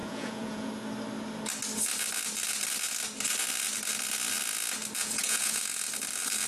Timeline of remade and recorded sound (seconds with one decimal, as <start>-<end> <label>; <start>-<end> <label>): 0.0-0.7 remade; 0.7-5.0 recorded; 5.0-5.6 remade; 5.6-6.5 recorded